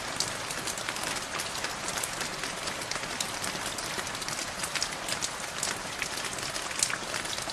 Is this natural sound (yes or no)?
yes